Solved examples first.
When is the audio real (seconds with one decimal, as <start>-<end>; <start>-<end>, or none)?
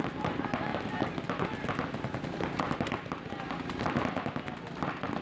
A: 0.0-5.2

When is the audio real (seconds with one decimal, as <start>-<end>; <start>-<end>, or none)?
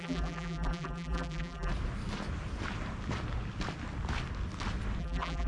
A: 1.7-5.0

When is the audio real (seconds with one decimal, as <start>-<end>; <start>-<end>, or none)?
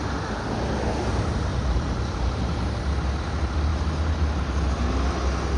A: 0.0-1.5; 2.9-5.6